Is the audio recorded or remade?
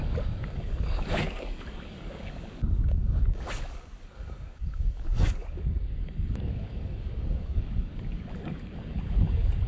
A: remade